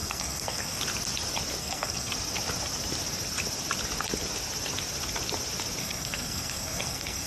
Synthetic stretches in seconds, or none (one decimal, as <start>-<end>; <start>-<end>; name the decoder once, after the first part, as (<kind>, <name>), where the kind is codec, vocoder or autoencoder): 0.0-0.8 (codec, SNAC); 1.6-2.1; 5.8-7.3